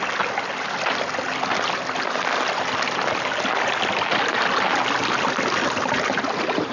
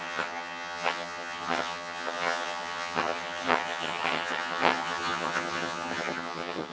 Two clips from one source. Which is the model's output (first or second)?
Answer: second